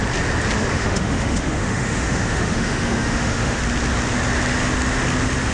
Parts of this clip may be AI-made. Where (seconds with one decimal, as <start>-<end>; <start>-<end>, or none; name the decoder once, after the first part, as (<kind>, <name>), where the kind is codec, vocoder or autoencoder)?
0.7-3.6 (autoencoder, DAC-VAE)